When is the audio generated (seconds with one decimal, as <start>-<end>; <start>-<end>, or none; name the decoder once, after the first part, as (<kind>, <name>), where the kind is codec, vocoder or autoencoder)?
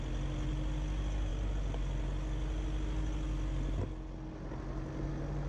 none